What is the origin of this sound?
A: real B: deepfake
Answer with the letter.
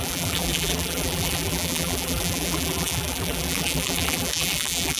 B